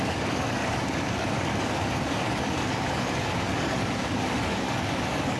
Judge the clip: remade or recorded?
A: remade